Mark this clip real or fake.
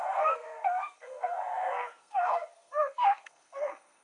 fake